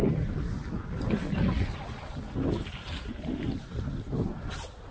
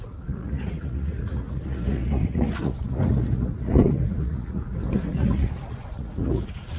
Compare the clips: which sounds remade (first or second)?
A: second